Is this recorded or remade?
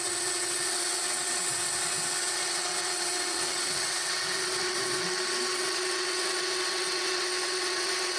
remade